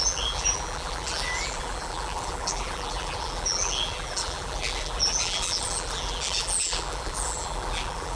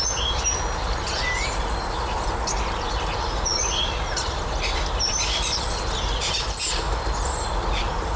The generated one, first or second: first